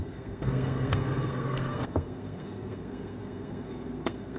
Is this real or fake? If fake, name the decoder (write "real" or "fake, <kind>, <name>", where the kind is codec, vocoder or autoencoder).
fake, codec, SNAC